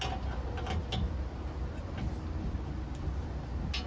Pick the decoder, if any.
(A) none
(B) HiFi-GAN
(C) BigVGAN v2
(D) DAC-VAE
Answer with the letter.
A